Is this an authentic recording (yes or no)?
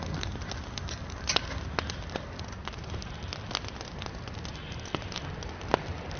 yes